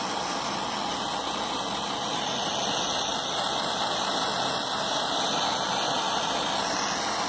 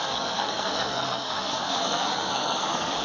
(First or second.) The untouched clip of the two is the first